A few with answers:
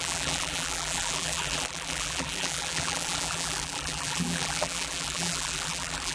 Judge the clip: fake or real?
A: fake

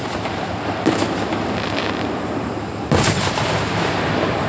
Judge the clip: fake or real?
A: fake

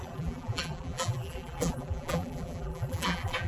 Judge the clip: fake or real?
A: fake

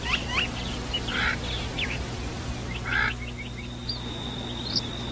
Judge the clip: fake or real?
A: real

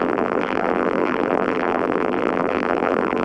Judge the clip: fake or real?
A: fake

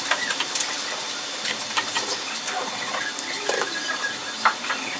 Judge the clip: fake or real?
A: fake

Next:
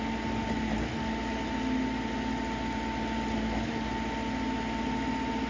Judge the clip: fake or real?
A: real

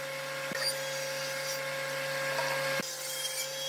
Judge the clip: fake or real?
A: real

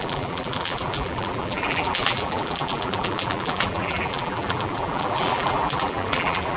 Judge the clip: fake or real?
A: fake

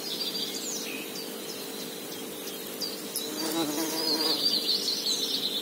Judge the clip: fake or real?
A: real